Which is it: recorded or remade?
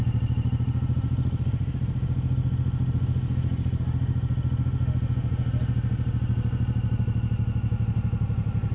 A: recorded